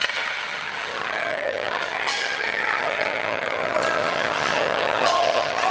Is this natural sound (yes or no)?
no